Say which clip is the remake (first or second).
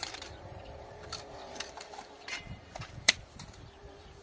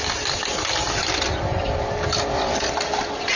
first